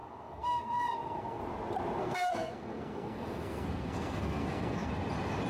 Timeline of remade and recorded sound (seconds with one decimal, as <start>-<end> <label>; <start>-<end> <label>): 0.0-1.4 remade; 1.4-2.0 recorded; 2.0-4.9 remade; 4.9-5.5 recorded